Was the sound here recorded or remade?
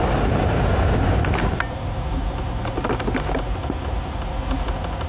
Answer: recorded